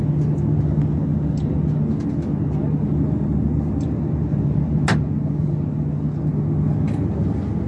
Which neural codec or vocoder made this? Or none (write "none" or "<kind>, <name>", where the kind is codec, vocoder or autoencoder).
none